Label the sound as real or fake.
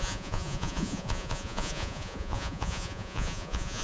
fake